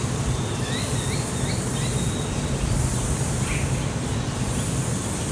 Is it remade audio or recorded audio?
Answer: recorded